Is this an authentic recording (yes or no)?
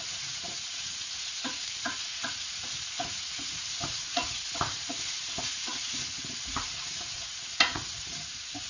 no